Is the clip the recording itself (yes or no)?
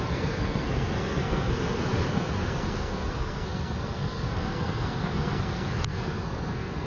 no